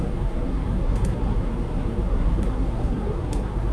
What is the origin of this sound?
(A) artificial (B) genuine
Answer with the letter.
A